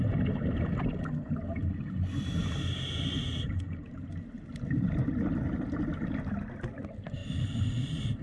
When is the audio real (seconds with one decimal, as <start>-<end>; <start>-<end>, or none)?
0.0-1.6; 4.9-7.2